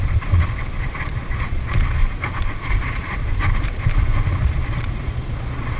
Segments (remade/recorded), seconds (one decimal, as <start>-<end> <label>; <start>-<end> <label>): 0.0-2.0 remade; 2.0-2.8 recorded; 2.8-3.3 remade; 3.3-4.3 recorded; 4.3-5.8 remade